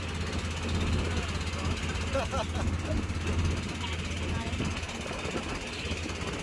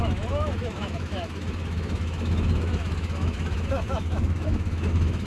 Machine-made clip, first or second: second